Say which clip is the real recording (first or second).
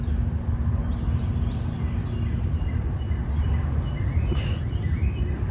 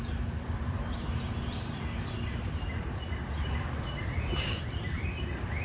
first